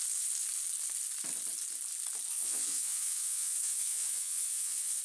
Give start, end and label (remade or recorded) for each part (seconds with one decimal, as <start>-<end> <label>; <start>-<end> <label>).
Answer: 0.0-2.3 recorded; 2.3-5.0 remade